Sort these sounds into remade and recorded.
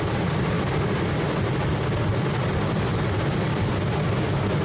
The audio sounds recorded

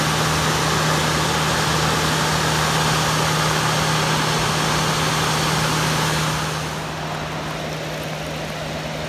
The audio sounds recorded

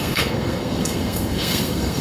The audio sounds remade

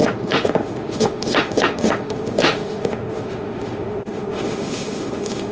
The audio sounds remade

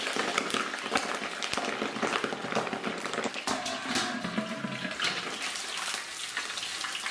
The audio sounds recorded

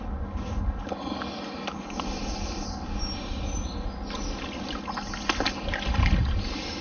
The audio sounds recorded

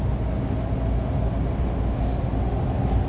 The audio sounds recorded